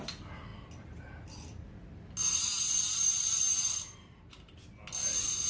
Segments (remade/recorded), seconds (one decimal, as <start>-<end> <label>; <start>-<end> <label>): 0.0-5.5 recorded